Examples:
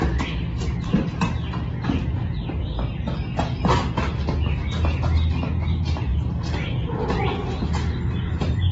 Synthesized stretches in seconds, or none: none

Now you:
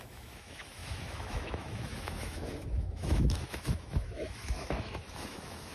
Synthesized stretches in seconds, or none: 0.0-5.7 (autoencoder, DAC-VAE)

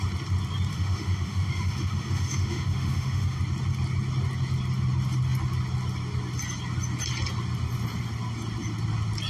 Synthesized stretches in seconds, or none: 0.7-3.4 (autoencoder, DAC-VAE)

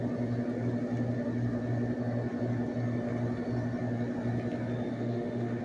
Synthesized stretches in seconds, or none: 4.9-5.6 (autoencoder, DAC-VAE)

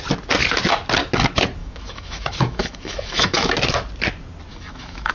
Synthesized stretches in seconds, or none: 1.6-3.5 (autoencoder, DAC-VAE); 4.5-5.1

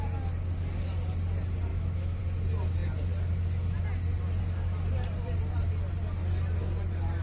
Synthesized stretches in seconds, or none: 1.7-2.2 (autoencoder, DAC-VAE)

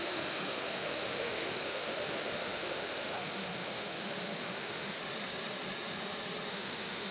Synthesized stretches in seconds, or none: 0.0-5.0 (autoencoder, DAC-VAE); 6.5-7.1